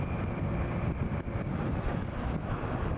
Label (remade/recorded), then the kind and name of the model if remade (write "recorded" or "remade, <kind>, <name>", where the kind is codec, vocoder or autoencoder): recorded